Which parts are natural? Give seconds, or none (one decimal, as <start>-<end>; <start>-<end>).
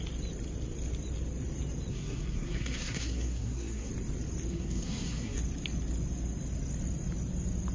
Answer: 0.0-1.9; 3.9-4.5; 5.4-7.7